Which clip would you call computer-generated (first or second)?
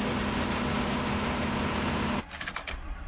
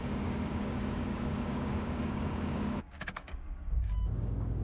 second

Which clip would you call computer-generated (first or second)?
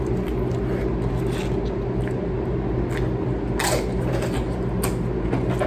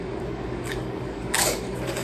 second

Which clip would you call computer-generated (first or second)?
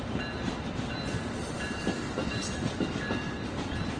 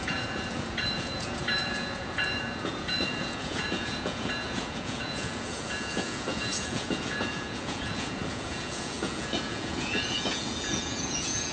second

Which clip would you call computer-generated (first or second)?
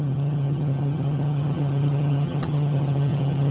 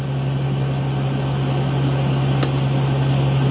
first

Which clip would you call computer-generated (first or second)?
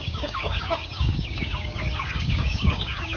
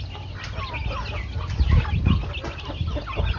first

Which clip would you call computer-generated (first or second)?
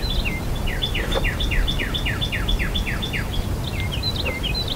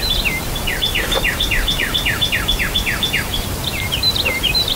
second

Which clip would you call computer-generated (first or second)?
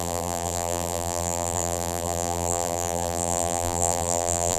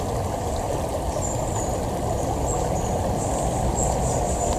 first